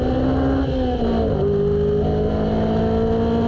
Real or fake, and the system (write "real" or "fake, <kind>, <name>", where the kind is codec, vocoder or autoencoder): real